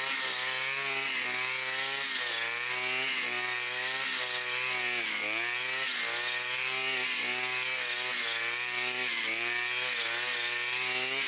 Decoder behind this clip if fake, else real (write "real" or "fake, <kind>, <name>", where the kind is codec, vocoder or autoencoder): real